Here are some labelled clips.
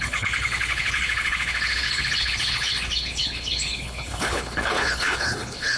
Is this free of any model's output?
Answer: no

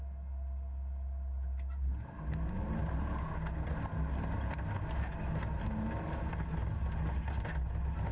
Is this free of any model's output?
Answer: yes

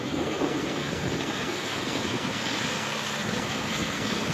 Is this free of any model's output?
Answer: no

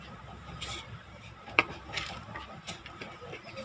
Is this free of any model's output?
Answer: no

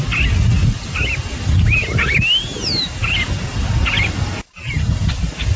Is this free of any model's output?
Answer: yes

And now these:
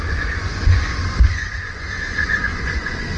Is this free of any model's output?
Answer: no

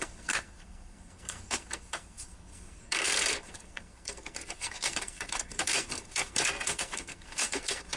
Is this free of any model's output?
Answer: no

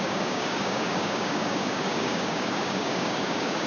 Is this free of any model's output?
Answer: no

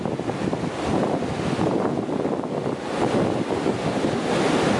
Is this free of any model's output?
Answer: yes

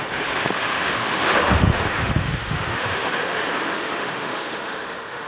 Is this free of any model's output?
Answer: no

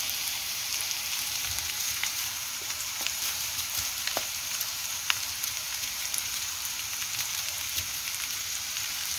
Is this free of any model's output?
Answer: no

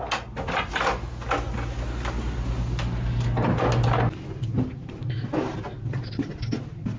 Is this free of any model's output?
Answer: yes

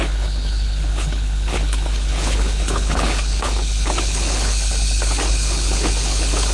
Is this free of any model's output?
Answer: no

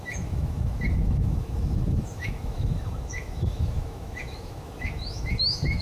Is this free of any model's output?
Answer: no